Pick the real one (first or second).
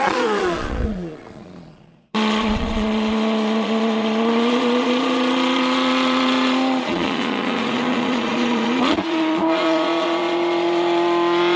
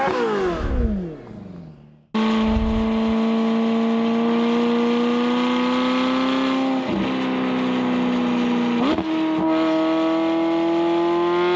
second